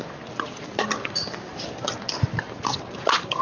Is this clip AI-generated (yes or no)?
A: no